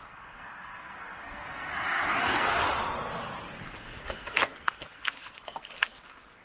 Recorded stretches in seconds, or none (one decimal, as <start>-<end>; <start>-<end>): 1.7-2.2; 2.6-3.7

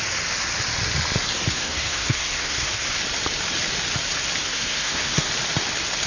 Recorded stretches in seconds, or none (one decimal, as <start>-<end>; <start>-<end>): 0.0-1.5; 3.0-4.4; 5.3-6.1

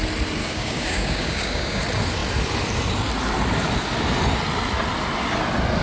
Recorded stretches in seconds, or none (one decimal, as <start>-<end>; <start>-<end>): 0.0-0.4; 1.8-5.8

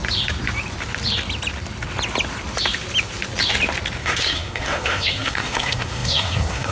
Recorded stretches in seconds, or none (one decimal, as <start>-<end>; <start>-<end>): 0.0-4.0

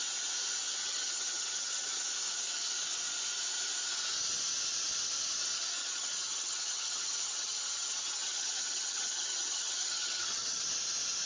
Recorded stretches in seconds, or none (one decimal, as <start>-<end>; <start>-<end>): 0.0-0.8; 2.0-5.8; 10.6-11.3

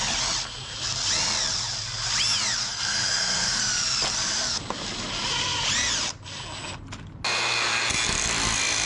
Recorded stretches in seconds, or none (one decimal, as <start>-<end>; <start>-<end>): 0.0-2.6; 3.6-8.9

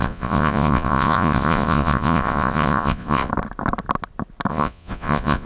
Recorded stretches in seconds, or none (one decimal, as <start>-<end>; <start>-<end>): 3.3-4.5